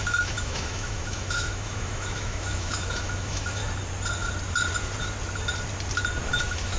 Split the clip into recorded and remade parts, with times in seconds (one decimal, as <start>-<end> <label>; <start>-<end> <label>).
0.0-3.6 remade; 3.6-6.3 recorded; 6.3-6.8 remade